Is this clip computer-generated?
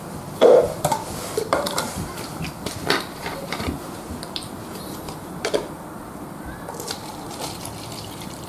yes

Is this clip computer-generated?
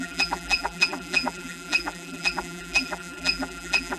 yes